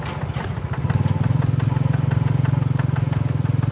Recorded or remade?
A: recorded